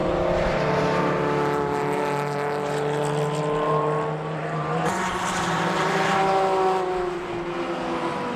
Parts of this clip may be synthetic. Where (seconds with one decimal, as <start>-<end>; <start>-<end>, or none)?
4.4-6.2